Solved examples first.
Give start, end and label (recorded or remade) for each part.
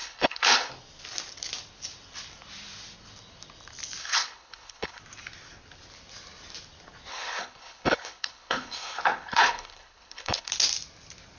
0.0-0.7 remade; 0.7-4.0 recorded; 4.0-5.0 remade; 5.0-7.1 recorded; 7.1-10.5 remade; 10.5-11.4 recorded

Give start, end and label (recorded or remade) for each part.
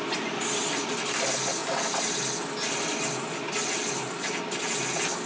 0.0-5.3 recorded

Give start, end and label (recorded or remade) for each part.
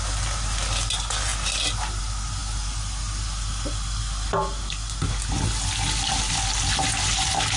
0.0-7.6 recorded